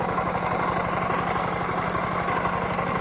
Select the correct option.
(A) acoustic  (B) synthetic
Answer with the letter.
A